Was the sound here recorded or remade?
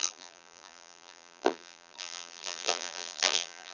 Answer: remade